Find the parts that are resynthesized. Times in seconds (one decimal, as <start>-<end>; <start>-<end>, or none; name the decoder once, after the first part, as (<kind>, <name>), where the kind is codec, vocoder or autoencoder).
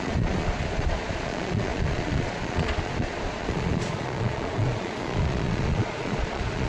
0.0-6.7 (vocoder, Vocos)